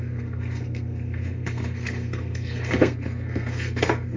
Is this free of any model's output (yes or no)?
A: no